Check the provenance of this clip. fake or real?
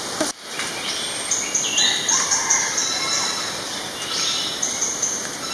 fake